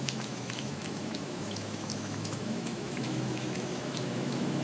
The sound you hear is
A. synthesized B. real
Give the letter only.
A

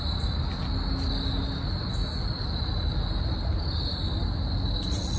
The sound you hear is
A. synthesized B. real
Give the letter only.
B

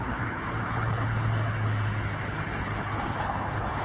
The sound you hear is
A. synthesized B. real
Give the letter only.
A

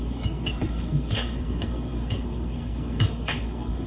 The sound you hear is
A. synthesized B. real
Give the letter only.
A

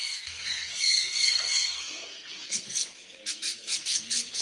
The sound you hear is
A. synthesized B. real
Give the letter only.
A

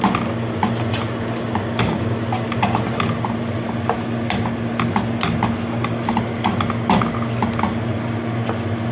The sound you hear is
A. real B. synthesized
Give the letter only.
A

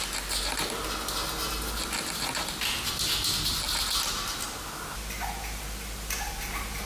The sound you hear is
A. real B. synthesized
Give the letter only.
A